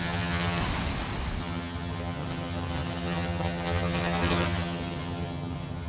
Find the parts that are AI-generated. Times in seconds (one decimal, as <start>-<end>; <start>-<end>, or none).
0.0-0.6; 1.4-5.9